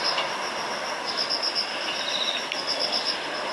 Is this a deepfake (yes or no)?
yes